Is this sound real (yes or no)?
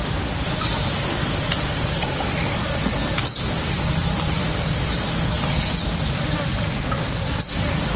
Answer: yes